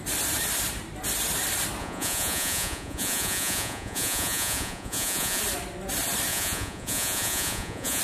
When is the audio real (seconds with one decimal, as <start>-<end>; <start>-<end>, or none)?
0.0-1.8; 5.4-6.3